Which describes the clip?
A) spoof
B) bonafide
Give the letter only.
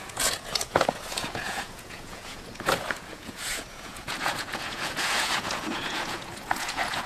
A